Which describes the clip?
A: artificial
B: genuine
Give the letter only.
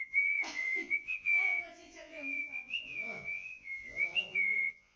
A